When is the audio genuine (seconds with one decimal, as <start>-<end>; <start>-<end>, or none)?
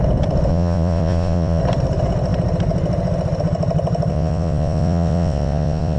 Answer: 0.0-0.5; 1.6-4.1